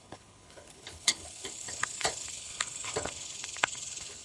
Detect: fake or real fake